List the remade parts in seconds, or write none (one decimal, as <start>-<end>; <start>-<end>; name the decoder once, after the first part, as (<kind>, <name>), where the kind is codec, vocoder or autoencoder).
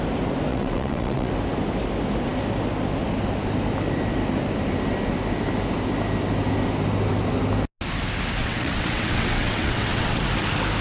0.5-1.3 (vocoder, WaveNeXt); 8.4-10.2